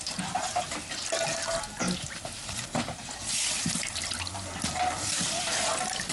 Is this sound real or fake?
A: real